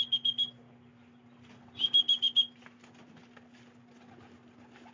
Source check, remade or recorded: recorded